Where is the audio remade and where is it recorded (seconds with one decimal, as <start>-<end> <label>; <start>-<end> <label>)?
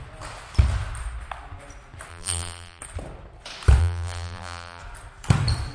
0.0-2.1 recorded; 2.1-2.8 remade; 2.8-3.8 recorded; 3.8-4.8 remade; 4.8-5.7 recorded